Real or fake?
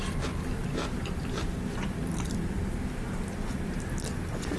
fake